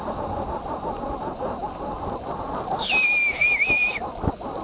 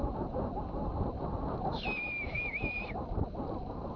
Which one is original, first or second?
first